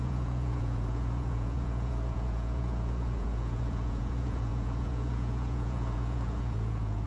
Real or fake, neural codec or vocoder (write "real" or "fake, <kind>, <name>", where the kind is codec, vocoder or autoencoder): fake, vocoder, Vocos